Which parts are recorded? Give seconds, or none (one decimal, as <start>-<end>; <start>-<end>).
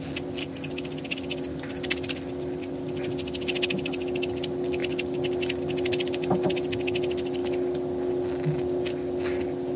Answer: 0.0-9.8